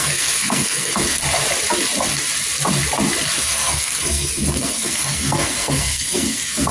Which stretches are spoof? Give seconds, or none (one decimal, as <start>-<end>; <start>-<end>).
0.0-1.2; 3.4-6.7